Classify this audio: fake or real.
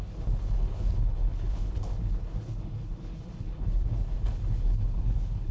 fake